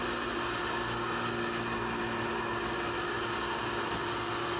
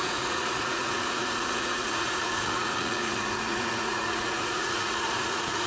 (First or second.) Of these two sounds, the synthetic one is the second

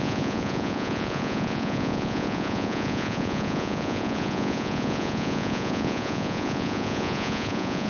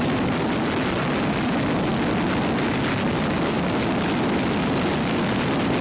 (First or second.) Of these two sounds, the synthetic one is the first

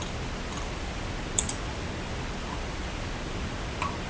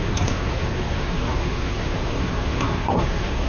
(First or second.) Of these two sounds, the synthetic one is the second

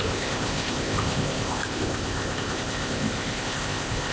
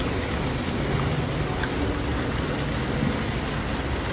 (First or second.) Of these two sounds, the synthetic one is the first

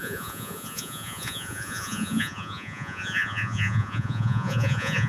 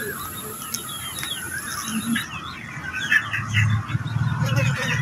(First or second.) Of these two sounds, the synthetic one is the first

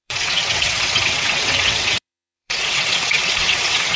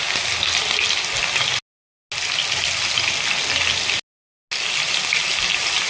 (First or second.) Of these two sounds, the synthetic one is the first